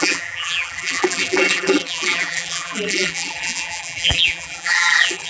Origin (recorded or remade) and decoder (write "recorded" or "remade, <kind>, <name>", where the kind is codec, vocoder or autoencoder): remade, vocoder, BigVGAN v2